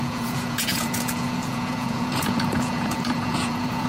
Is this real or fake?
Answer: fake